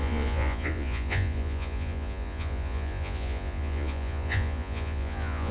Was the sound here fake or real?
fake